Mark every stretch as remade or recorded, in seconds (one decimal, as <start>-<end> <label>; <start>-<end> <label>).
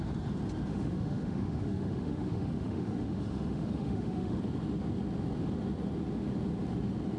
0.0-0.7 recorded; 0.7-4.4 remade; 4.4-7.2 recorded